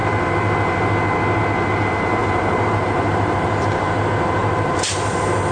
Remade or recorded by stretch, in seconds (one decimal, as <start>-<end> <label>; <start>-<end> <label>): 0.0-2.2 recorded; 2.2-3.8 remade; 3.8-4.4 recorded; 4.4-5.5 remade

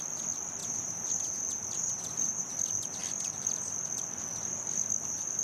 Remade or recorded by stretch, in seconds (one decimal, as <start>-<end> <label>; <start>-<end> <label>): 0.0-0.6 recorded; 0.6-2.5 remade; 2.5-5.4 recorded